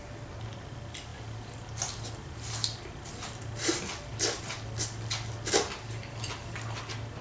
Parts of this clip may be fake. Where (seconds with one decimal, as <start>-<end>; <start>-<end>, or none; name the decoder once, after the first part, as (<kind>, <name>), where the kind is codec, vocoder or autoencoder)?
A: none